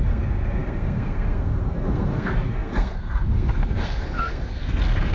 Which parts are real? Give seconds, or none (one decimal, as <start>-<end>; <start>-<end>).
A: none